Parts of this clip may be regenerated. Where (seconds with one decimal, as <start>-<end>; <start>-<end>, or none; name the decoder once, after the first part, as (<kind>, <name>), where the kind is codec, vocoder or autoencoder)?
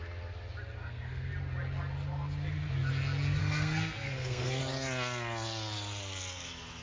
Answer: 0.8-1.3 (codec, SNAC); 3.4-4.6